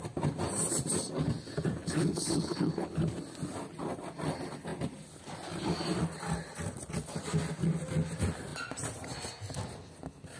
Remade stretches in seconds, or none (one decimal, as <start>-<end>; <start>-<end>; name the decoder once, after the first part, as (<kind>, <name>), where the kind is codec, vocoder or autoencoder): 1.8-3.0 (codec, HILCodec)